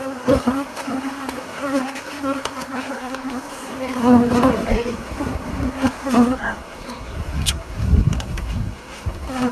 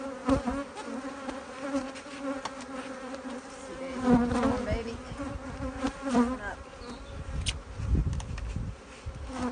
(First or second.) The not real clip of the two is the first